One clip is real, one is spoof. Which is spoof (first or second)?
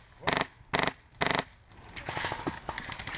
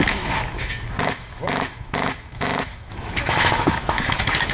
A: second